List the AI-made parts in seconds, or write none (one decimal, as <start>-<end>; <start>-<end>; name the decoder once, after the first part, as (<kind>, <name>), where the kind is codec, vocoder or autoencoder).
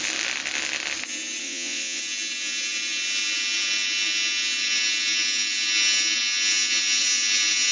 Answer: 1.4-2.0 (vocoder, Vocos)